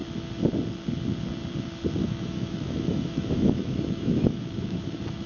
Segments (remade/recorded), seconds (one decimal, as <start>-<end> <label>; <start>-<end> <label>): 0.0-2.0 recorded; 2.0-5.3 remade